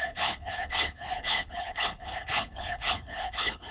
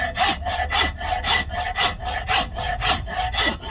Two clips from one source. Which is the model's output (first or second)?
first